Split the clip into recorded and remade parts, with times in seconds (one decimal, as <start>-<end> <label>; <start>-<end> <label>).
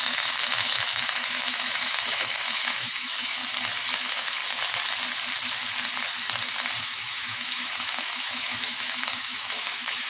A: 0.0-3.4 remade; 3.4-4.0 recorded; 4.0-4.4 remade; 4.4-6.8 recorded; 6.8-10.1 remade